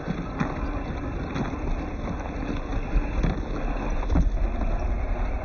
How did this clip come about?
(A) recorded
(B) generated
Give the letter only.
A